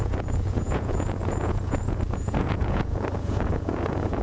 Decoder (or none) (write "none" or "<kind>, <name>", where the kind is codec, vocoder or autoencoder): vocoder, Vocos